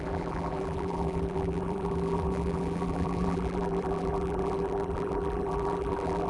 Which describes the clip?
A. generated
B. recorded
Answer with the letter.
A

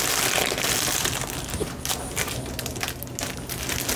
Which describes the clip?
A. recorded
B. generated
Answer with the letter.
A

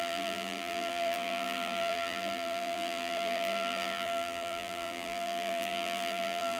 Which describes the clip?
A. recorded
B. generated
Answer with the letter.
B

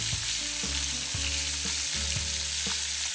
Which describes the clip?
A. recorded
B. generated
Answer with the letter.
A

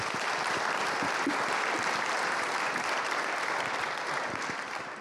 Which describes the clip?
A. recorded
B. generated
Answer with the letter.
B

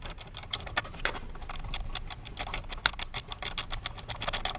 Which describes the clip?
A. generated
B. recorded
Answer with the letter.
B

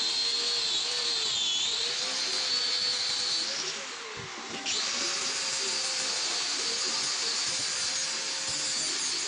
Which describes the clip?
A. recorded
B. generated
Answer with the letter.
A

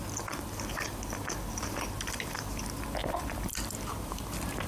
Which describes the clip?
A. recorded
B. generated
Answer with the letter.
B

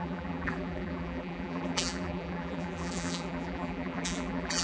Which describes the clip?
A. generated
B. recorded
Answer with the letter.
A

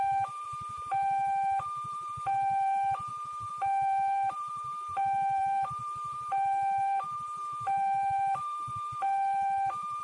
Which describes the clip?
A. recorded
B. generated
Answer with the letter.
B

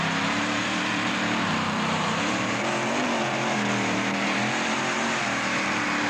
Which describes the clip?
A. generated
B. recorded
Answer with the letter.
A